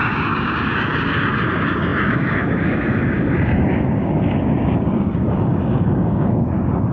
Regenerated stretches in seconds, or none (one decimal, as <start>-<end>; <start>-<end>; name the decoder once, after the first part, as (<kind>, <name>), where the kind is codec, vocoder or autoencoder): 0.0-6.9 (codec, DAC)